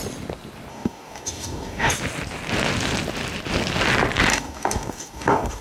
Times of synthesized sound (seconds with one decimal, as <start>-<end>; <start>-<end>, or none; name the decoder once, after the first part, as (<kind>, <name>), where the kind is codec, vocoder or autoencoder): 0.7-1.9 (codec, DAC); 4.3-5.6

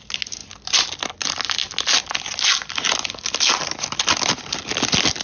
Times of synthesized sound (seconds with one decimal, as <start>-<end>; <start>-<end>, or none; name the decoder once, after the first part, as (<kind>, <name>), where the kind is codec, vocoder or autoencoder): none

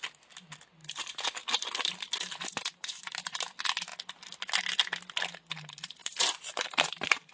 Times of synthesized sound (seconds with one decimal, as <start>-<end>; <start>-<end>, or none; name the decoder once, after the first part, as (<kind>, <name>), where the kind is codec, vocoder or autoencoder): 0.8-3.4 (vocoder, BigVGAN v2); 6.0-7.3

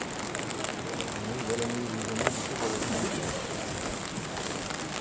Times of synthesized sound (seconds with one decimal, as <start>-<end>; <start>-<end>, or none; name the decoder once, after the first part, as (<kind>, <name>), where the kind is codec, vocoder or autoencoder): none

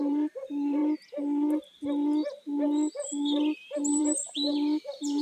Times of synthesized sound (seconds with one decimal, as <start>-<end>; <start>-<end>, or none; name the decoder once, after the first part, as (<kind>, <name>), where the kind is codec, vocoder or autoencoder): 0.0-0.8 (vocoder, BigVGAN v2); 3.9-5.2

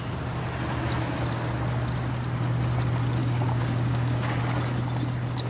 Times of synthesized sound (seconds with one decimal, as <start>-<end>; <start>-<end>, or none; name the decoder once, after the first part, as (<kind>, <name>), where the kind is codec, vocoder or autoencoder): 3.2-4.4 (codec, DAC)

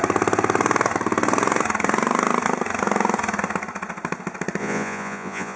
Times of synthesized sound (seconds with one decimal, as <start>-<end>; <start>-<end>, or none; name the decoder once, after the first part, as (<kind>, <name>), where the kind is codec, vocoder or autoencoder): 4.6-5.6 (vocoder, Vocos)